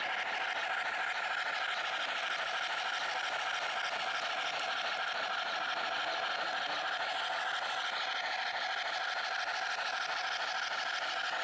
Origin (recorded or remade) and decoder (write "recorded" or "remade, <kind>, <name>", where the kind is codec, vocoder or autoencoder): recorded